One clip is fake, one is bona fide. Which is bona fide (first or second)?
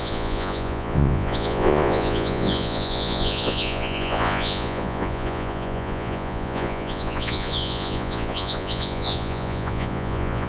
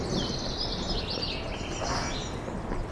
second